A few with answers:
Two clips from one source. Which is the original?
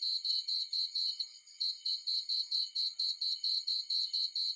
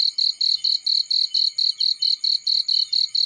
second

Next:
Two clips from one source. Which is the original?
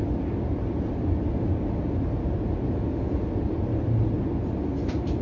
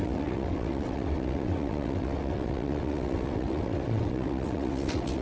first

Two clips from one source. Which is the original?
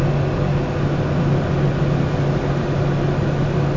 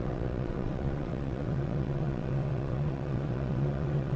first